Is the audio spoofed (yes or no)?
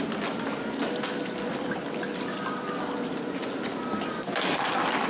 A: no